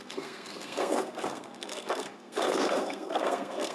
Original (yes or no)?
no